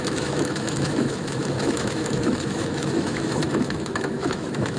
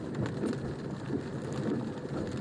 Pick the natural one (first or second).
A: second